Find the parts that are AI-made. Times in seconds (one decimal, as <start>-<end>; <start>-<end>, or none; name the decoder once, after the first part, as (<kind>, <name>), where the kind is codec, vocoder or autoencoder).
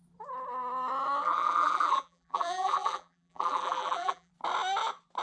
1.2-4.3 (vocoder, BigVGAN v2)